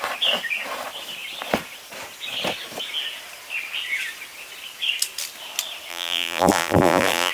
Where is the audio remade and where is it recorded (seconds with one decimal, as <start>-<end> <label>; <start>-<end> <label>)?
0.0-5.9 recorded; 5.9-7.3 remade